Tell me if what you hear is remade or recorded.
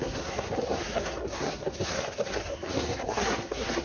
remade